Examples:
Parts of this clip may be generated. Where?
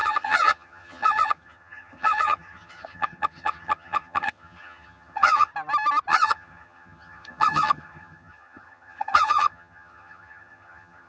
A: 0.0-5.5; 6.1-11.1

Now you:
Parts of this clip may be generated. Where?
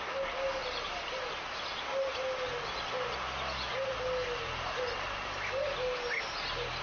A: none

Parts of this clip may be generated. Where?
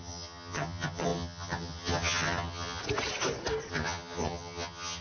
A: 0.0-2.8; 3.7-5.0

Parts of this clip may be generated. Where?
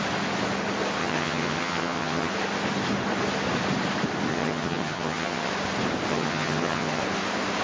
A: 1.0-2.3; 4.3-5.5; 6.1-7.0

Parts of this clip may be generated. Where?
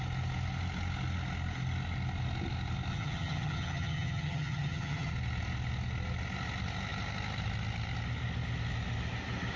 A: 2.9-5.1